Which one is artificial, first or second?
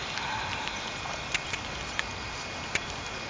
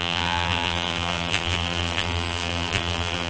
second